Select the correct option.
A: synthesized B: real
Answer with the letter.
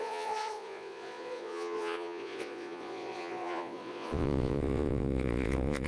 A